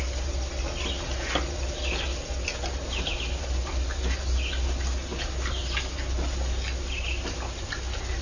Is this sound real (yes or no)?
yes